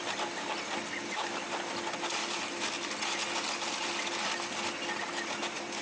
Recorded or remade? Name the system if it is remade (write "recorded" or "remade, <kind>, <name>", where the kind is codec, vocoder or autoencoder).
recorded